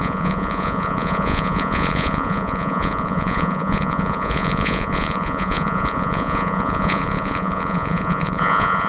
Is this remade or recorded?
remade